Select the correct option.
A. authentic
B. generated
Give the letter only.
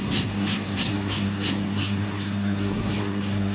B